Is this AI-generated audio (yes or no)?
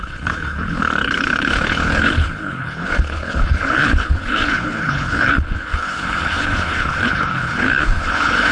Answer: yes